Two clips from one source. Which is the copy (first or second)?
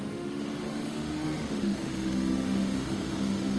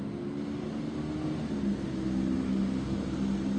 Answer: first